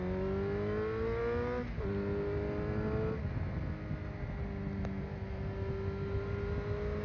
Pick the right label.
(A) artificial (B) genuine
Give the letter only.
B